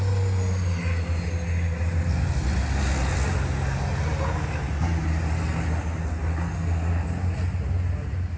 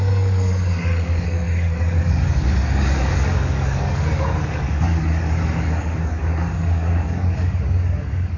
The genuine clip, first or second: first